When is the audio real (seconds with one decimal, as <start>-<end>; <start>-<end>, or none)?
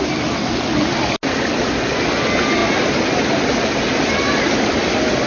0.0-5.3